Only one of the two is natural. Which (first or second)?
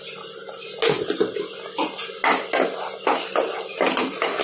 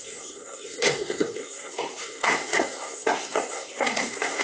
first